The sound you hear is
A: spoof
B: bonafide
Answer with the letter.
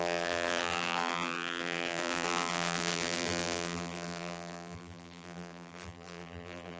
A